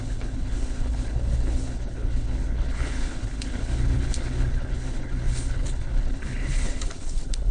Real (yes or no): no